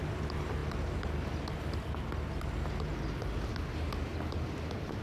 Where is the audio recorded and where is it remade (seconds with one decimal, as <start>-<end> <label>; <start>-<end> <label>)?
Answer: 0.0-0.6 remade; 0.6-3.5 recorded; 3.5-5.0 remade